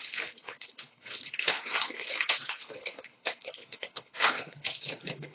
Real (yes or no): no